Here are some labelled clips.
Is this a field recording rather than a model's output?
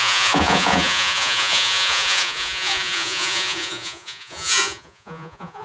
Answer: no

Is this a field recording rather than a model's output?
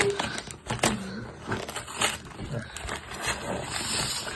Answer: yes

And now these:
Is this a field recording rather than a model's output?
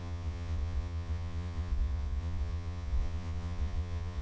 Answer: no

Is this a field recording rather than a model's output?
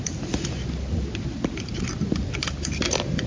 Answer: yes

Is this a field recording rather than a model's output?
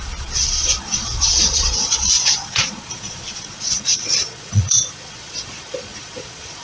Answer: no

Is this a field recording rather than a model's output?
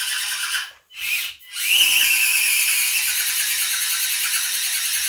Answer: yes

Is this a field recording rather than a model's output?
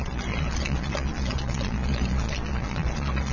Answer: no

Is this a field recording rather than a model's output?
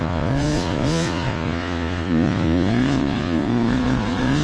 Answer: no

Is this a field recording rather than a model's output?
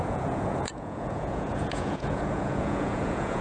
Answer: no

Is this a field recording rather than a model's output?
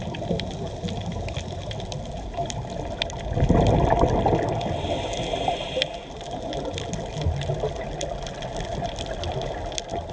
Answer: yes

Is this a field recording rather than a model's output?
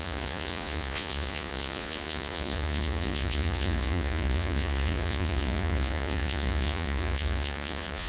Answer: no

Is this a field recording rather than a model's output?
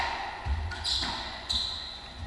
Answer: no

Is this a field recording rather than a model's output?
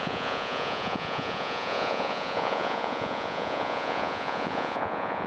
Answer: no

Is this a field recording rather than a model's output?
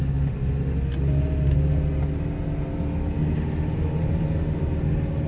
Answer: yes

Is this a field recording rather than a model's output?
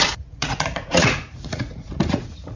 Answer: no